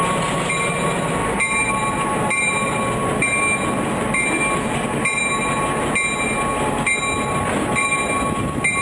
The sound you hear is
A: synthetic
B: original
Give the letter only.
B